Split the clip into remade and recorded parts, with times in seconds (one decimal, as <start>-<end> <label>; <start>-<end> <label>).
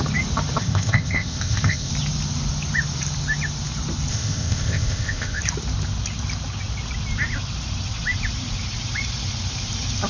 0.0-0.6 recorded; 0.6-1.9 remade; 1.9-4.1 recorded; 4.1-5.4 remade; 5.4-10.1 recorded